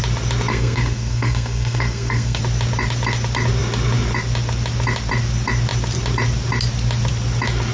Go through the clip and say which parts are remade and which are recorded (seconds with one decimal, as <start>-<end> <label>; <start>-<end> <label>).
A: 0.0-0.5 recorded; 0.5-2.4 remade; 2.4-7.7 recorded